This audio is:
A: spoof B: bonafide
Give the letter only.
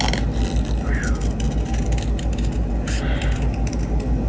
B